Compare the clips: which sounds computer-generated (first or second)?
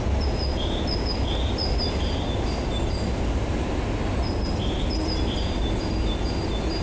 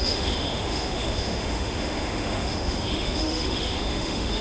second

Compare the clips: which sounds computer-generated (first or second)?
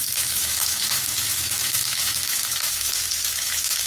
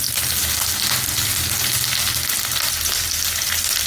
first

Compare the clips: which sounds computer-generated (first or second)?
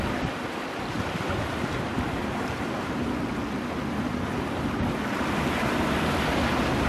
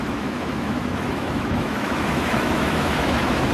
second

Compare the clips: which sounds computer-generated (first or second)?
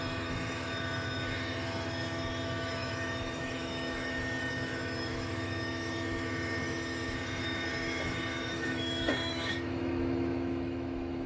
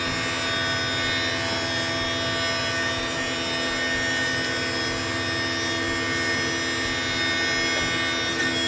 first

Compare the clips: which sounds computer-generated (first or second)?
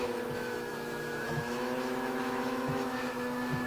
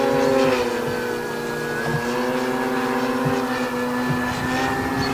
first